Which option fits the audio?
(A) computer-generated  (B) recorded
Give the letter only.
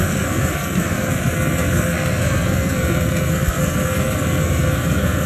A